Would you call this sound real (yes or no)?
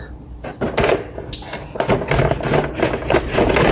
yes